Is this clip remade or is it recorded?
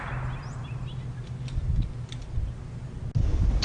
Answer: recorded